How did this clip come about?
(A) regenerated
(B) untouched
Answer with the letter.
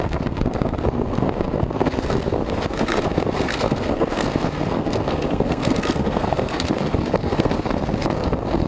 A